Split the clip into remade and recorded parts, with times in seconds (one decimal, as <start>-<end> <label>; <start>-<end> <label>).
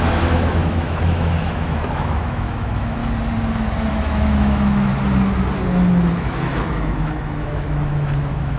0.0-3.0 remade; 3.0-3.9 recorded; 3.9-4.9 remade; 4.9-6.1 recorded; 6.1-8.6 remade